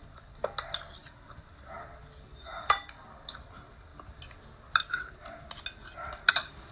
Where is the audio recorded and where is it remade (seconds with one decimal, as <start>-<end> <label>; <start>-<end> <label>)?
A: 0.0-3.9 remade; 3.9-6.3 recorded; 6.3-6.7 remade